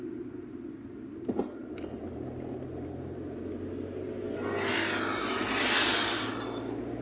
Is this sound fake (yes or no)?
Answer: no